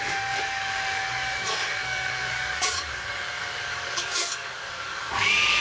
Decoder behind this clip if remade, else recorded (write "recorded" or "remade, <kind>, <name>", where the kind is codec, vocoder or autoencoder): remade, codec, DAC